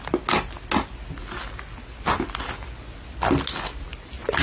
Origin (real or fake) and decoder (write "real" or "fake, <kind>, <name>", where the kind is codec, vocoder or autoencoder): real